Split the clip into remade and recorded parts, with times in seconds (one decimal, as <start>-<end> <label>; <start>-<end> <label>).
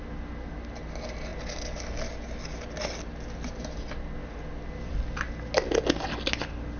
0.0-6.8 recorded